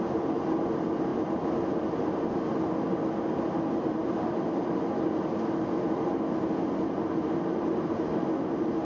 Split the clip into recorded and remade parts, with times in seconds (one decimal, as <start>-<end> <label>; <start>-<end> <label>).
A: 0.0-8.8 recorded